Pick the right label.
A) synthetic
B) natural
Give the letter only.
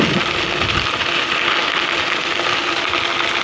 B